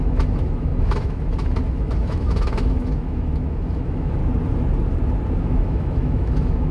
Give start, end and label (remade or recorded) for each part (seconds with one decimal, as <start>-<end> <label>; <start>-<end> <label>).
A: 0.0-4.2 remade; 4.2-5.4 recorded; 5.4-6.7 remade